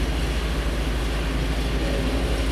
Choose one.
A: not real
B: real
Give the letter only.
B